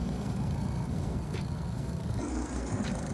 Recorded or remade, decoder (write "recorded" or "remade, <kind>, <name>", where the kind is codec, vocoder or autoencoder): remade, codec, SNAC